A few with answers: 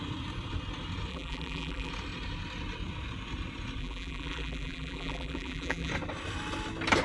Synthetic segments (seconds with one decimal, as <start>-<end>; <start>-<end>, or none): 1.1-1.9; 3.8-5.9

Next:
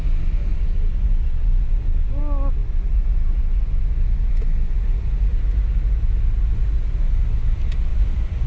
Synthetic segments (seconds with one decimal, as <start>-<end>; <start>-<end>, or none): 7.9-8.5

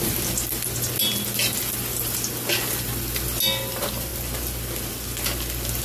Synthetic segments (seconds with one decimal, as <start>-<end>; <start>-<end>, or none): none